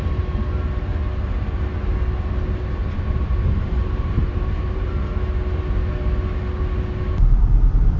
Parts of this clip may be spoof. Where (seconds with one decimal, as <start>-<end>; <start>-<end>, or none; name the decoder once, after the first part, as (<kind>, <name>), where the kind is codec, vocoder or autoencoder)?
2.8-5.0 (vocoder, BigVGAN v2)